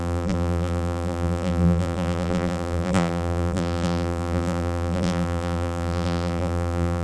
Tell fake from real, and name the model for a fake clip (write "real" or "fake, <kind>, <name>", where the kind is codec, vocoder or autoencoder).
fake, vocoder, BigVGAN v2